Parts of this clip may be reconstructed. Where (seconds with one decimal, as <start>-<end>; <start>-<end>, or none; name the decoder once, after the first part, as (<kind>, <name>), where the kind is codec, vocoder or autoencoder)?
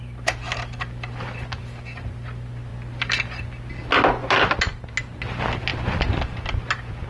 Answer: none